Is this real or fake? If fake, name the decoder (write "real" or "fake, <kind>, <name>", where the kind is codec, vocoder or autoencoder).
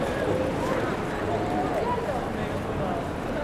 fake, vocoder, BigVGAN v2